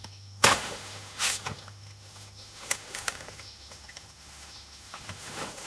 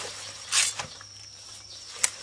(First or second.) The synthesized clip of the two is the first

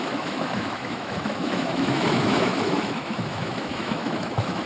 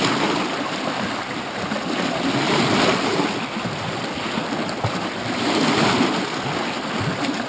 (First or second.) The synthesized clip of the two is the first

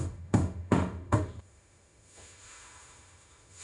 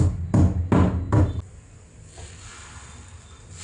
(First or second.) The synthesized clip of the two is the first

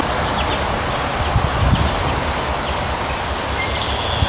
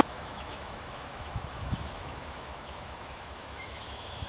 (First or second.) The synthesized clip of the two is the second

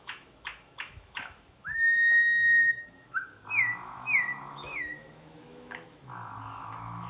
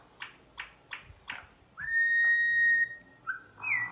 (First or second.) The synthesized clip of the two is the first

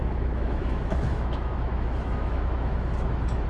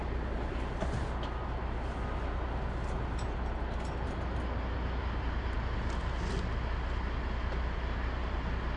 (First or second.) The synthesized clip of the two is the first